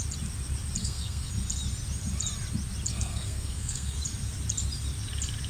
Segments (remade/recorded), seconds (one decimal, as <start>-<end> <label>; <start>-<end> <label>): 0.0-0.8 recorded; 0.8-1.3 remade; 1.3-2.9 recorded; 2.9-4.0 remade; 4.0-5.5 recorded